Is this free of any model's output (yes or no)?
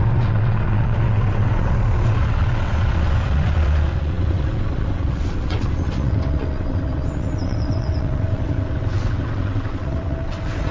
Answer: no